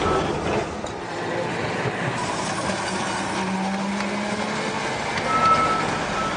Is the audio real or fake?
real